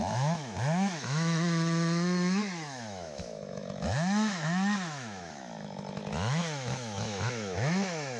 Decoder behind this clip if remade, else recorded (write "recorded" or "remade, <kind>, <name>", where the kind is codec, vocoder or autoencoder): remade, autoencoder, DAC-VAE